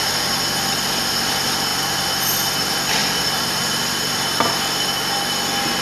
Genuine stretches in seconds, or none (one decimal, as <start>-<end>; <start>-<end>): 0.0-5.8